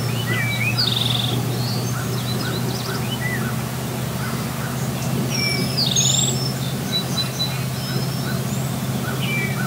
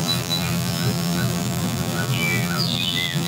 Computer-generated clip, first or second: second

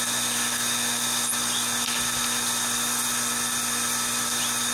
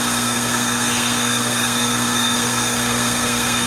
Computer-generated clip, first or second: second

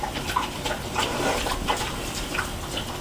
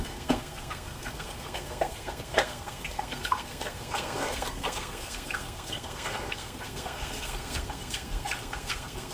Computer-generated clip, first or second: second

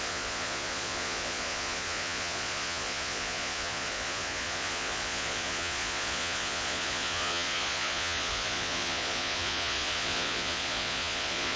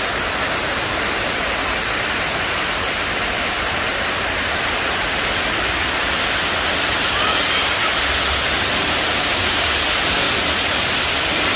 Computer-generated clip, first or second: first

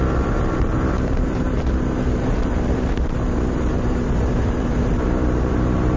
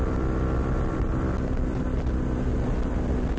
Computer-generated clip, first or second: first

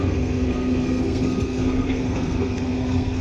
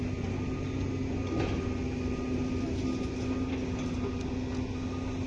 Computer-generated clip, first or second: first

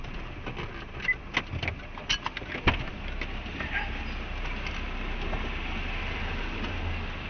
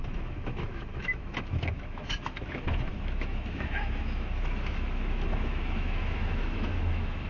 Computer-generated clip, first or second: second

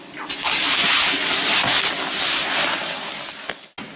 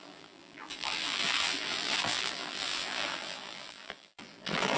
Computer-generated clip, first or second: second